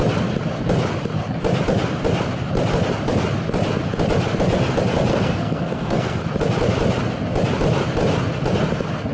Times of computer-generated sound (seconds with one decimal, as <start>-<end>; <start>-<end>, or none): 5.1-6.2